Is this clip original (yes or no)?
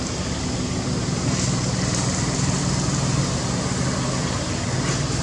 yes